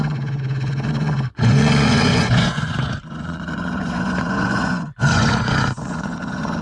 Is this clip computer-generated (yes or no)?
yes